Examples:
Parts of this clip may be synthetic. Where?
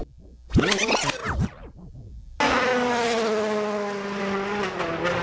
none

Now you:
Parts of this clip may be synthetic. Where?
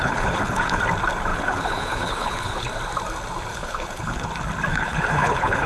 0.0-0.8 (codec, HILCodec); 1.3-2.7; 3.5-4.3; 4.7-5.7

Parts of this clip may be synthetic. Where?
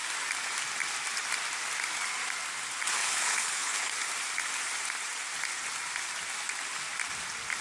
3.0-3.9 (codec, HILCodec)